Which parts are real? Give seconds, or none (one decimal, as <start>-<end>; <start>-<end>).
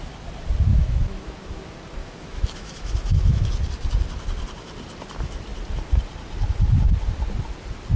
0.0-0.7; 1.6-2.0; 3.5-8.0